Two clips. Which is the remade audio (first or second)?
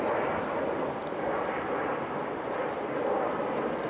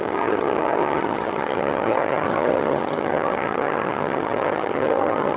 second